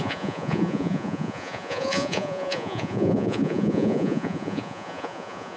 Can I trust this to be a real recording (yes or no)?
no